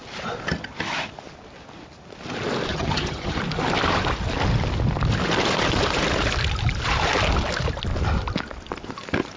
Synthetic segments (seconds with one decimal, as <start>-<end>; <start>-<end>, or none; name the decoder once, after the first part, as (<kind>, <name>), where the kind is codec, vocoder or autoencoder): 2.7-3.4 (vocoder, HiFi-GAN)